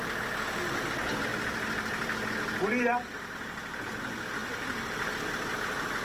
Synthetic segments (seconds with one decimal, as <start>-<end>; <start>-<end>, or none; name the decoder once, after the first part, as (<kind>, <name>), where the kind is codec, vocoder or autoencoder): none